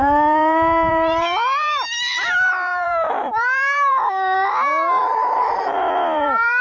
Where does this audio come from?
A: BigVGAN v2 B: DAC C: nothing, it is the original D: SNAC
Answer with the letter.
A